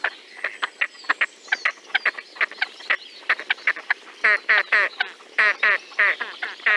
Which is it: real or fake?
real